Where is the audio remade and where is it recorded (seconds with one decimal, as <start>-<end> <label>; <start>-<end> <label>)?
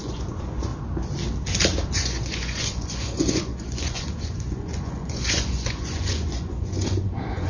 0.0-0.7 remade; 0.7-1.9 recorded; 1.9-7.5 remade